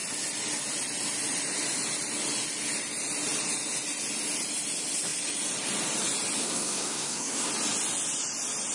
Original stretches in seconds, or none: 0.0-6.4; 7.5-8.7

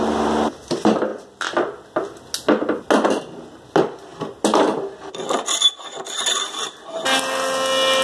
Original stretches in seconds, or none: 0.0-8.0

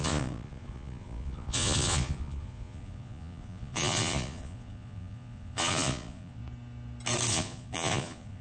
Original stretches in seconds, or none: 6.4-7.3

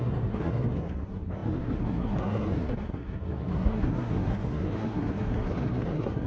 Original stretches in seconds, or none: none

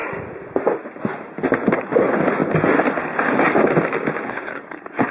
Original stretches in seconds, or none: 0.0-4.3

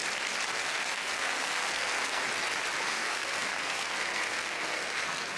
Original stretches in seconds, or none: 0.0-0.5; 2.2-2.8

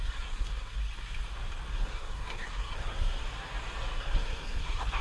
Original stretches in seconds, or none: 0.8-1.7; 3.2-4.0

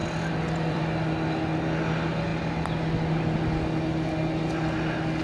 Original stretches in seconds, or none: 0.8-5.2